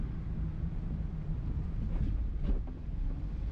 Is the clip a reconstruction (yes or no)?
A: no